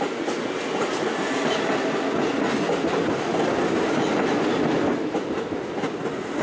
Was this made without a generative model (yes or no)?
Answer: yes